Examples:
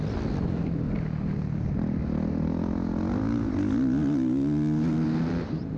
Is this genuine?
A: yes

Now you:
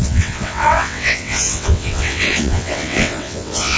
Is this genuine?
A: no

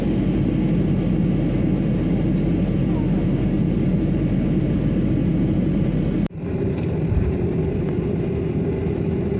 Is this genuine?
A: yes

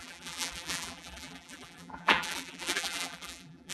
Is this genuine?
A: no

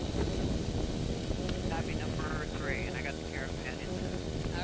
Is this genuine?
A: yes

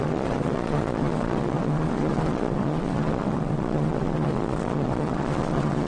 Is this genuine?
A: no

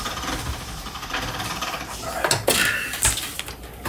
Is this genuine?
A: yes